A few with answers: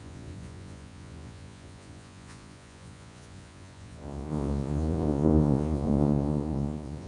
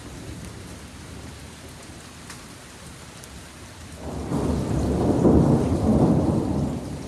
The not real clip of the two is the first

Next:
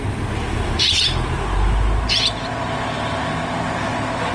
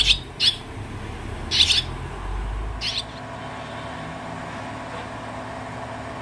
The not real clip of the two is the first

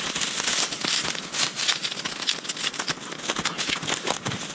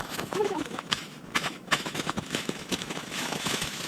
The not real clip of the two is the second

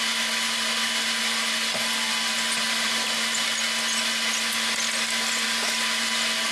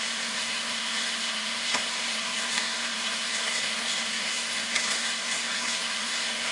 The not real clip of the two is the second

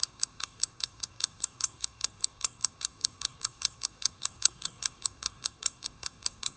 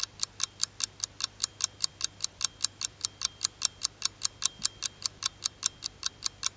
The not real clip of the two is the first